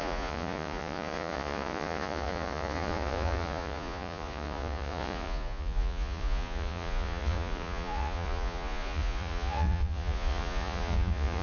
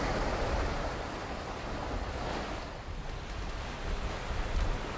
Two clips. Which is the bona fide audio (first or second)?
second